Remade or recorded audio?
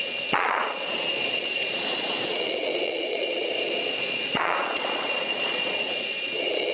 remade